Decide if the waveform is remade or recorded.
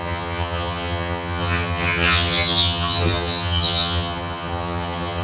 remade